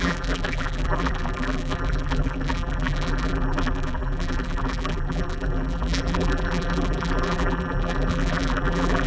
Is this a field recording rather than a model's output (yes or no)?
no